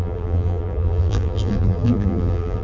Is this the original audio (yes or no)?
no